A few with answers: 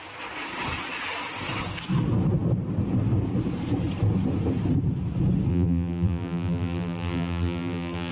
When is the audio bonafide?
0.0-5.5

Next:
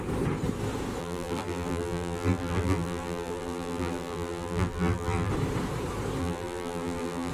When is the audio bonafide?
0.0-1.0; 5.3-6.2